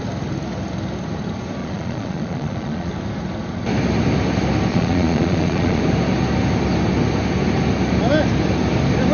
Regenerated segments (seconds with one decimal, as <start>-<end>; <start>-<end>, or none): 1.6-2.9; 4.7-5.8